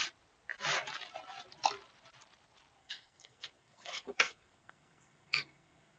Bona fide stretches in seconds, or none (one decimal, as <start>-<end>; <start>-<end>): 0.0-2.8